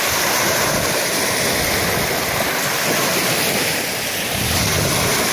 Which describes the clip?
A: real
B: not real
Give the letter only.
A